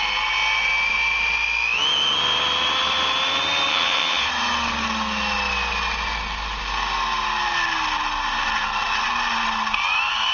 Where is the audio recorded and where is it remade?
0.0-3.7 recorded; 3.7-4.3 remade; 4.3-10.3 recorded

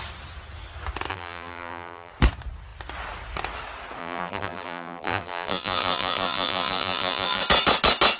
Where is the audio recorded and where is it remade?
0.0-1.1 recorded; 1.1-2.1 remade; 2.1-4.0 recorded; 4.0-7.4 remade; 7.4-8.2 recorded

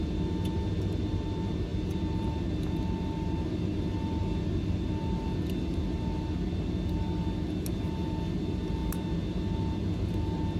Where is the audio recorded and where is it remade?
0.0-10.6 recorded